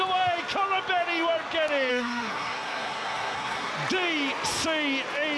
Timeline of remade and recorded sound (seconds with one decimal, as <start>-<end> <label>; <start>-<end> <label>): 0.0-1.9 recorded; 1.9-3.7 remade; 3.7-5.4 recorded

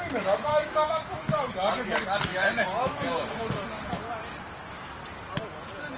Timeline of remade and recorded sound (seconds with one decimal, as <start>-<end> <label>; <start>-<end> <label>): 0.0-0.5 recorded; 0.5-1.5 remade; 1.5-2.3 recorded; 2.3-4.2 remade; 4.2-6.0 recorded

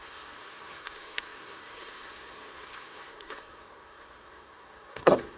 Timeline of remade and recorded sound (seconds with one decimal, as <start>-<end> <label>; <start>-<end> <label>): 0.0-5.4 remade